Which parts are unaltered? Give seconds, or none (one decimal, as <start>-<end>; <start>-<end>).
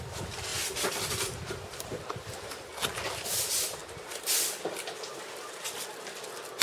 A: 0.5-1.1; 2.7-3.3; 3.8-4.6